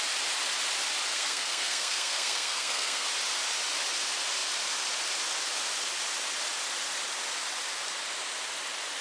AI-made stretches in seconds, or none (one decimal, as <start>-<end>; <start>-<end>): 1.1-3.1